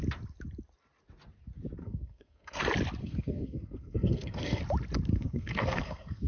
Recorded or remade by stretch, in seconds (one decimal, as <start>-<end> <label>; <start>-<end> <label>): 0.0-1.8 recorded; 1.8-2.6 remade; 2.6-3.0 recorded; 3.0-4.6 remade; 4.6-5.1 recorded; 5.1-6.3 remade